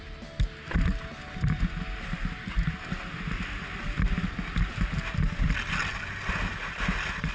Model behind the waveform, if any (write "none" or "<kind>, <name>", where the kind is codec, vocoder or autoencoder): none